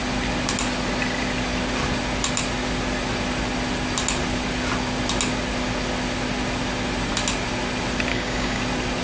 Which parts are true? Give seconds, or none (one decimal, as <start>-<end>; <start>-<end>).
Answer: 0.0-8.1; 8.6-9.0